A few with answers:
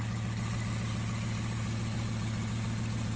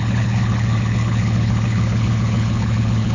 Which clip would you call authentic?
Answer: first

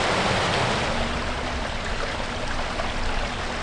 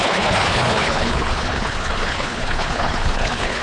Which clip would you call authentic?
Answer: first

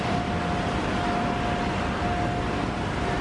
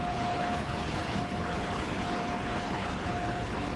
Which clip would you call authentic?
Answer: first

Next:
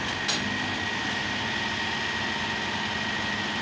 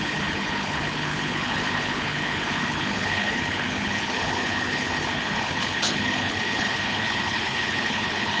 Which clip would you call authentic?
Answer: first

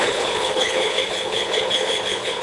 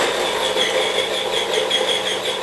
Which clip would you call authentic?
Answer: second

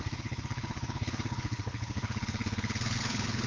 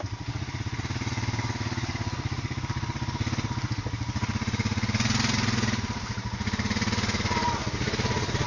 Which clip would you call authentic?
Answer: second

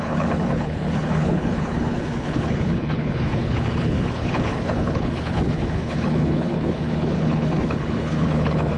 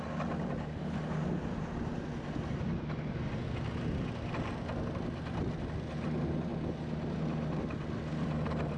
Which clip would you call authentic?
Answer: second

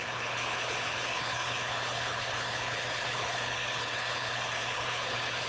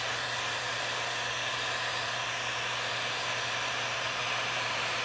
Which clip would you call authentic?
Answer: second